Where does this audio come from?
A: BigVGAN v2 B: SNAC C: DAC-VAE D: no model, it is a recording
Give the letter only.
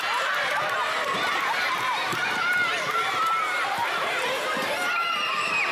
A